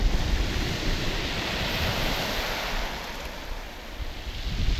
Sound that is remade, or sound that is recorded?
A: recorded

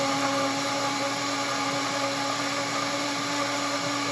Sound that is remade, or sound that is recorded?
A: recorded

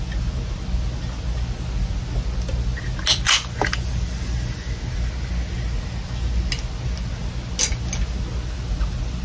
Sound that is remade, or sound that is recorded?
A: recorded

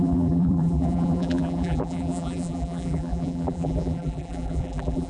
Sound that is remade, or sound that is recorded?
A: remade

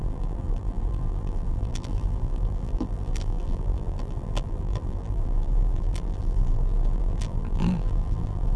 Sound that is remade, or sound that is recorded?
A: remade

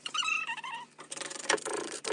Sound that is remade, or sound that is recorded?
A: remade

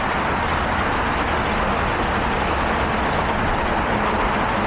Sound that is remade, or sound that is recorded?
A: recorded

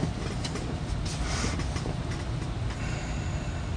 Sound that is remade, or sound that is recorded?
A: recorded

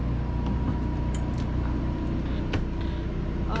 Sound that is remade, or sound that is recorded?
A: recorded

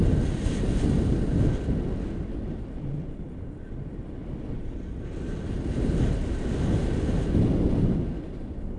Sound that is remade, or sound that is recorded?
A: recorded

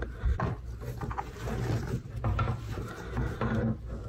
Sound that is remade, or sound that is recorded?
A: recorded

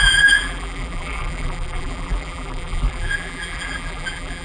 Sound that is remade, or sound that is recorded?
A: remade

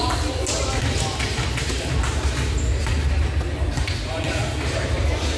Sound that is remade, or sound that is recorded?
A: recorded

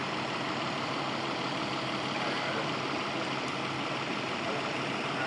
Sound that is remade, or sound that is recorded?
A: recorded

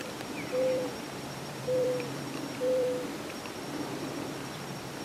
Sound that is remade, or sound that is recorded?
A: remade